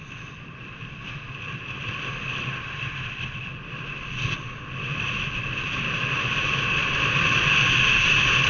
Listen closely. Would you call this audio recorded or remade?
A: recorded